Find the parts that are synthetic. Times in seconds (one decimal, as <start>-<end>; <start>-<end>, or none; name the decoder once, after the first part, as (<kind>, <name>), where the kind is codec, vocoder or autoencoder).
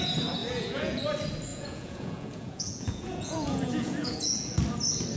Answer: 0.4-1.0 (vocoder, Vocos); 1.5-4.6